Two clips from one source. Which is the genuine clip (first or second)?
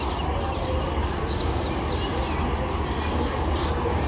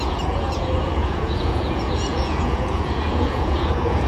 first